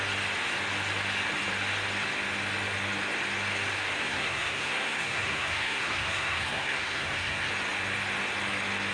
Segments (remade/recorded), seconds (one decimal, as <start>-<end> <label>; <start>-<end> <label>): 0.0-4.0 recorded; 4.0-7.5 remade; 7.5-8.9 recorded